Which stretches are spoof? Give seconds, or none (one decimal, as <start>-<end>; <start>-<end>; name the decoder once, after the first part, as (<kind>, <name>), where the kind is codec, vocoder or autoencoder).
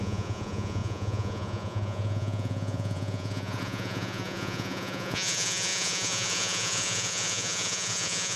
0.0-8.4 (vocoder, Vocos)